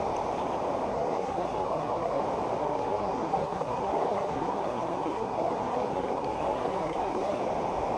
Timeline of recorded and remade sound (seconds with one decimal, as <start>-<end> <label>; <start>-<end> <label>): 0.0-0.9 recorded; 0.9-2.2 remade; 2.2-2.6 recorded; 2.6-7.4 remade; 7.4-8.0 recorded

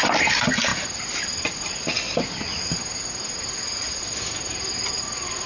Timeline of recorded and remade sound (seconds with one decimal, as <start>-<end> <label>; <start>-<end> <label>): 0.0-5.5 recorded

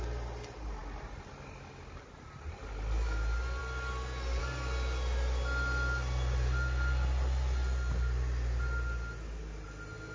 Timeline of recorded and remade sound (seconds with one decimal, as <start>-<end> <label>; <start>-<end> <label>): 0.0-10.1 recorded

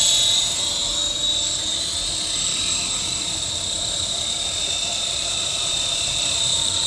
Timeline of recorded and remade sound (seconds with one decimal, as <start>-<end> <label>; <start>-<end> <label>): 0.0-4.9 recorded; 4.9-6.9 remade

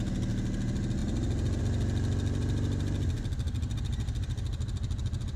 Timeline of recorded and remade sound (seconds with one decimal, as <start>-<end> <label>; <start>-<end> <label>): 0.0-5.4 recorded